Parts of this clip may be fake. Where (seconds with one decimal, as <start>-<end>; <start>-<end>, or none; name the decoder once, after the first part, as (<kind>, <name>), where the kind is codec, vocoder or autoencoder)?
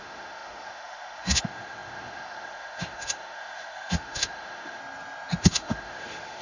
0.0-4.8 (autoencoder, DAC-VAE); 5.4-6.4